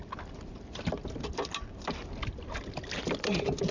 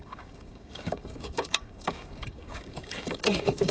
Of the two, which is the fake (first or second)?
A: second